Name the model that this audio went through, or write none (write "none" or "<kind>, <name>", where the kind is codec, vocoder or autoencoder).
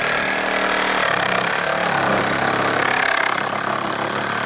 none